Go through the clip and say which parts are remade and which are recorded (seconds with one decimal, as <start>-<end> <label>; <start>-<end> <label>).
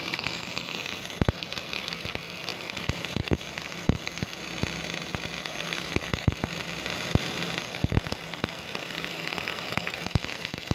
0.0-4.4 remade; 4.4-5.4 recorded; 5.4-6.5 remade; 6.5-7.6 recorded; 7.6-10.7 remade